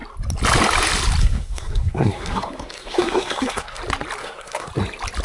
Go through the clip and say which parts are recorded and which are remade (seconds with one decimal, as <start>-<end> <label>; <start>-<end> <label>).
0.0-1.2 recorded; 1.2-3.8 remade; 3.8-4.2 recorded; 4.2-4.7 remade; 4.7-5.2 recorded